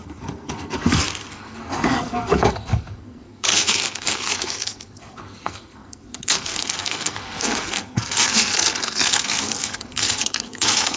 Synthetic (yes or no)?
yes